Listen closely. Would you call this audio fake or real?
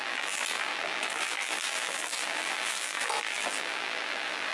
fake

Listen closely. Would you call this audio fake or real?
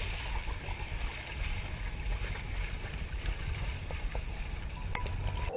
real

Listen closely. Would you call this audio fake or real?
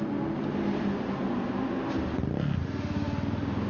real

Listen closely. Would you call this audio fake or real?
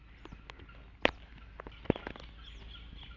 real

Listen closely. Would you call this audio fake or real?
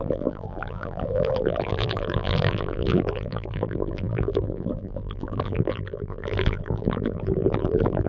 fake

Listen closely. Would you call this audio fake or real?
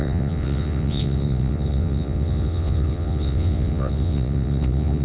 fake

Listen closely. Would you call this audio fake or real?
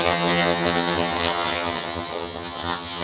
fake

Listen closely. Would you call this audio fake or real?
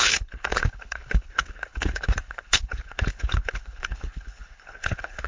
fake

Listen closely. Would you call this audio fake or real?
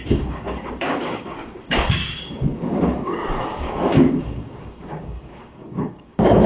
fake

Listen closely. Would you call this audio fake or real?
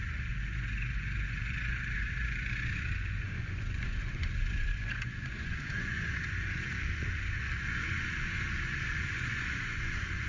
fake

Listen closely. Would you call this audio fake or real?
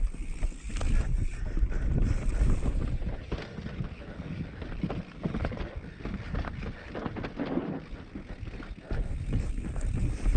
real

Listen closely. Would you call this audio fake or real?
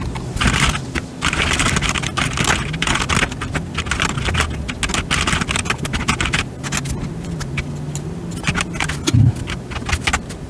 real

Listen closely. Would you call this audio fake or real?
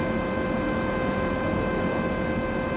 real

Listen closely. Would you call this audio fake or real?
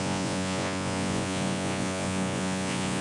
fake